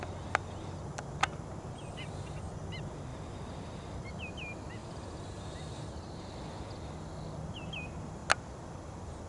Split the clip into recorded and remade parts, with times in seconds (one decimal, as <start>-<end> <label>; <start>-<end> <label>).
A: 0.0-3.1 recorded; 3.1-4.1 remade; 4.1-4.8 recorded; 4.8-6.3 remade; 6.3-9.3 recorded